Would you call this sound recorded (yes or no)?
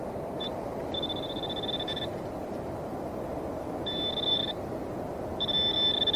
no